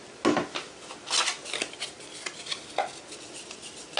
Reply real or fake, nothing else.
real